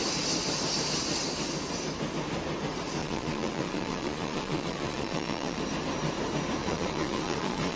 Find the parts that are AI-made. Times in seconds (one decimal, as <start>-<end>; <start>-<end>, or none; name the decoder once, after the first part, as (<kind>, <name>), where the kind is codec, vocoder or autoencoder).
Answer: 3.0-5.6 (vocoder, Vocos); 6.6-7.8